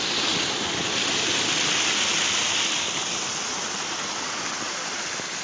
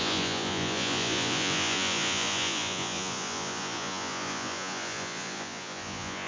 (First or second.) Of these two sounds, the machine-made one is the second